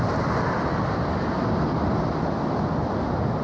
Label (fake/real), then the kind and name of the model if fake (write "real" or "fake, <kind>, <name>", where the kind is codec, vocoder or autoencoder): real